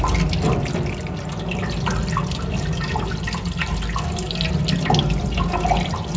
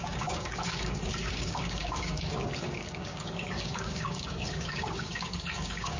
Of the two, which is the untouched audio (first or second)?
first